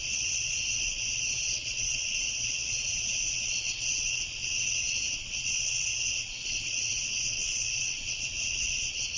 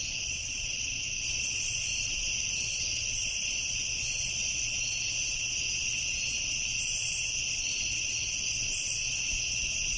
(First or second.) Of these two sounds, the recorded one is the second